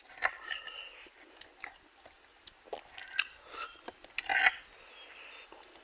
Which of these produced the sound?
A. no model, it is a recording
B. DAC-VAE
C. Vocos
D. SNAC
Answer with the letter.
A